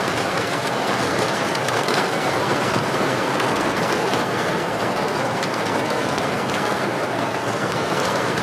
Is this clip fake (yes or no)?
yes